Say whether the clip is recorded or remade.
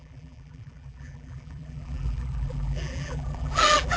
remade